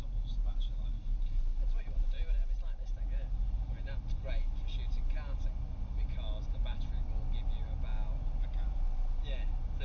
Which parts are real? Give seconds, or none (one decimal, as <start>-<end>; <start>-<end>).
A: 0.0-9.8